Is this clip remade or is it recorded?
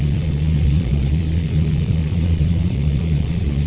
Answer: remade